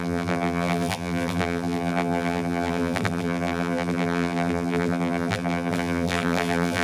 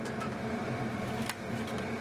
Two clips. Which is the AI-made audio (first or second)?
first